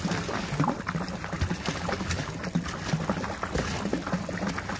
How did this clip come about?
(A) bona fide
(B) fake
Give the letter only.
A